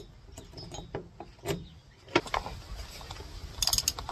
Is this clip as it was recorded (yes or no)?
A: yes